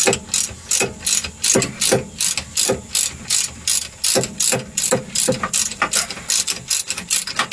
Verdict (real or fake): real